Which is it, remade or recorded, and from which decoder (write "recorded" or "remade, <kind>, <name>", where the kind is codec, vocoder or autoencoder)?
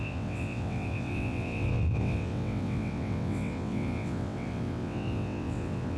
remade, vocoder, WaveNeXt